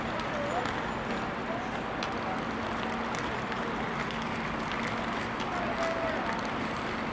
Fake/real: real